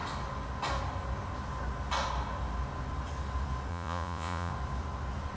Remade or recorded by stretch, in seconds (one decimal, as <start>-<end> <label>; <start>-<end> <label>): 0.0-3.7 recorded; 3.7-4.5 remade; 4.5-5.4 recorded